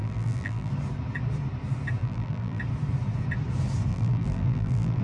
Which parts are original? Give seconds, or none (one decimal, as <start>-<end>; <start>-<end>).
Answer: 0.7-2.0; 2.6-3.9